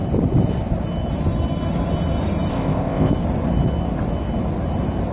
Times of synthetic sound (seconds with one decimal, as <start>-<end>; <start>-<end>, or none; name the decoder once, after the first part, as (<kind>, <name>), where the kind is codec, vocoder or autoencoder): 2.5-3.1 (codec, ZipCodec)